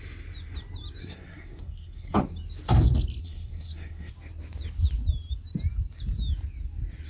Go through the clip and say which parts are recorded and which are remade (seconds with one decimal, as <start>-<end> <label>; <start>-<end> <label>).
0.0-1.0 recorded; 1.0-2.2 remade; 2.2-3.2 recorded; 3.2-4.1 remade; 4.1-7.1 recorded